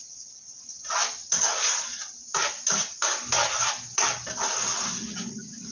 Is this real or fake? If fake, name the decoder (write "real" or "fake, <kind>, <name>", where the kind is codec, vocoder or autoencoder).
real